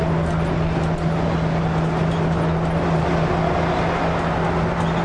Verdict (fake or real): real